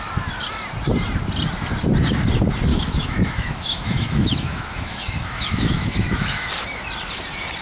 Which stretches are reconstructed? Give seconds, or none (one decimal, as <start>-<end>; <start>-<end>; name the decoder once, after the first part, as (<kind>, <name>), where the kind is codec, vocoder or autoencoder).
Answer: 2.7-6.5 (autoencoder, DAC-VAE)